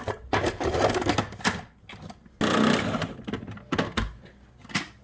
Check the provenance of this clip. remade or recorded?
recorded